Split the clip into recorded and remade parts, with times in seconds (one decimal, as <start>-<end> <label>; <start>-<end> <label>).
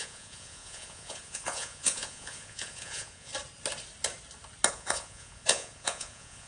0.0-3.3 remade; 3.3-4.7 recorded; 4.7-6.5 remade